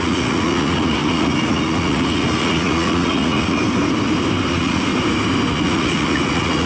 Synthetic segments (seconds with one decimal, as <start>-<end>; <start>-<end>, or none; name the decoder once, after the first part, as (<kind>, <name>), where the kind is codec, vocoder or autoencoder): 0.0-3.6 (vocoder, Vocos); 4.5-4.9; 5.5-6.7